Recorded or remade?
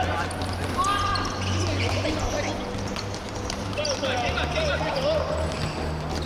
recorded